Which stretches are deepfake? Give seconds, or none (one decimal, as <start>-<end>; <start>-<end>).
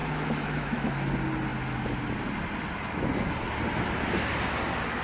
0.0-0.9